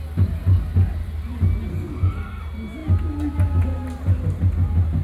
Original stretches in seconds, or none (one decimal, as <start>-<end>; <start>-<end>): 0.0-1.7; 2.4-5.0